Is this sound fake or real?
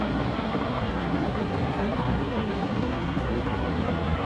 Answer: fake